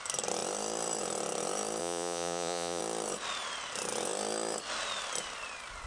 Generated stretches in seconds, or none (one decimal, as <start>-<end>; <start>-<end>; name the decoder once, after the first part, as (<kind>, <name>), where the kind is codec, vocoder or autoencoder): 1.8-2.8 (vocoder, Vocos)